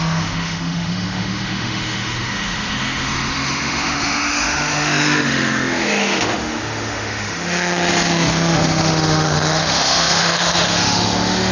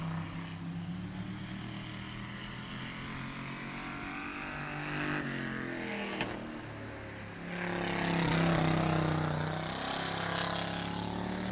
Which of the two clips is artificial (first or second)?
first